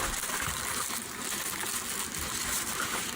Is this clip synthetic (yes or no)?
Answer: no